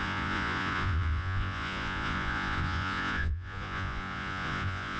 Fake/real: fake